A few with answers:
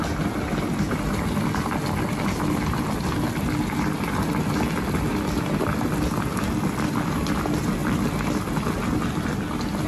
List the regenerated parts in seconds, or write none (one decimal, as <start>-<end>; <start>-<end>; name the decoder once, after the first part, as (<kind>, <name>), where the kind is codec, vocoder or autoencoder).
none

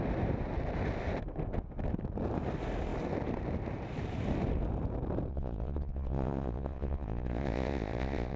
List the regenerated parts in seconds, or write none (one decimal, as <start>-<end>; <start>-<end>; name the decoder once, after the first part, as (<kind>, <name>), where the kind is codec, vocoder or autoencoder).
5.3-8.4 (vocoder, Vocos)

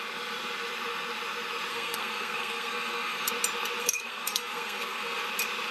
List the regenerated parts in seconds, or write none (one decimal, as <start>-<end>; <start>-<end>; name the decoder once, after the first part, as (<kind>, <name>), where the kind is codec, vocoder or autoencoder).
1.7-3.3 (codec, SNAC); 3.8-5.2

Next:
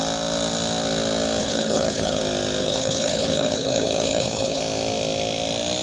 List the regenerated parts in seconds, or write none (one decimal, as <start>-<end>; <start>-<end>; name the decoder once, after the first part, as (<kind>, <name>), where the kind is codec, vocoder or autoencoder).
1.4-2.2 (codec, HILCodec); 2.6-4.6

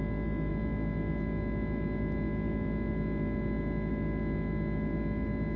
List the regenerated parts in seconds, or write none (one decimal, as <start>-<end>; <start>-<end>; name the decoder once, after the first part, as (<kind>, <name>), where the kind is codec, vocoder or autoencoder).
none

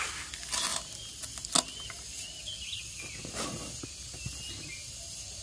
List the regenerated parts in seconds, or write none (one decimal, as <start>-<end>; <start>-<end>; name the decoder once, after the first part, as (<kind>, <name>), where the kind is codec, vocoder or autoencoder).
none

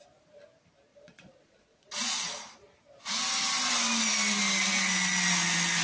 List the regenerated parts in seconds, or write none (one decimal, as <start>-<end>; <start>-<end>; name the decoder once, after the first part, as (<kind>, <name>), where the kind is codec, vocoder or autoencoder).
0.9-2.6 (vocoder, Vocos)